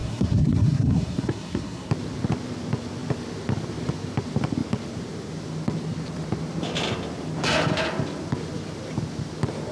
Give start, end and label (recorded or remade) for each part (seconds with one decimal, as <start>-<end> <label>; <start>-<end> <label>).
0.0-1.9 remade; 1.9-9.7 recorded